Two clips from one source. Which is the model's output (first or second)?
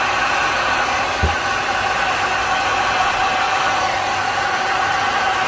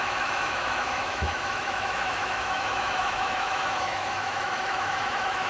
second